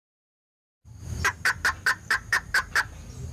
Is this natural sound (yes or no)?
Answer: no